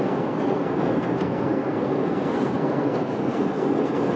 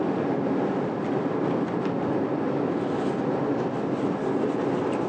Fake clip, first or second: first